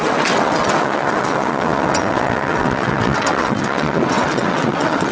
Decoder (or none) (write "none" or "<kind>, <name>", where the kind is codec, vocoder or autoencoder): vocoder, WaveNeXt